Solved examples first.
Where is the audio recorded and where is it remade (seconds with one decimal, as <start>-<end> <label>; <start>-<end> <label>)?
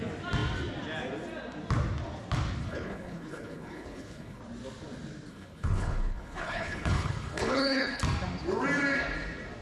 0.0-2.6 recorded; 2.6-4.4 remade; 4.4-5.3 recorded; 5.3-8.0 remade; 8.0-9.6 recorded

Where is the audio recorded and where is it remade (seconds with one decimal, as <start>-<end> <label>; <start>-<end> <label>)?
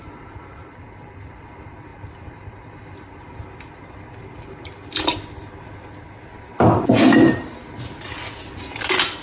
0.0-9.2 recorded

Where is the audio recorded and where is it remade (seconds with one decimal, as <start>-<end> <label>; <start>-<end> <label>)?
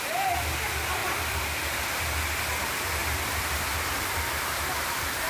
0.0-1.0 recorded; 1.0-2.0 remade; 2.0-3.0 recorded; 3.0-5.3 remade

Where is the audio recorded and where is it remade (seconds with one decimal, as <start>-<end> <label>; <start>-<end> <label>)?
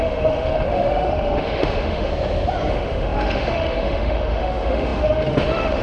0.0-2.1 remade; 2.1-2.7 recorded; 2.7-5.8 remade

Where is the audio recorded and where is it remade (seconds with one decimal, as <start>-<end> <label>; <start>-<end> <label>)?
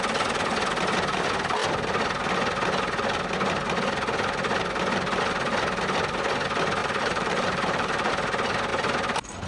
0.0-6.8 recorded; 6.8-8.1 remade; 8.1-9.5 recorded